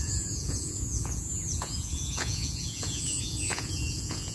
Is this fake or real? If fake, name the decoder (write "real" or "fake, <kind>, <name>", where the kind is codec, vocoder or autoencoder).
fake, vocoder, Vocos